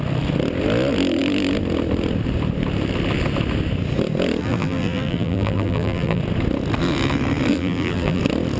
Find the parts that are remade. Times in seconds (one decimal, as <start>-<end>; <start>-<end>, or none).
4.4-6.2; 7.5-8.2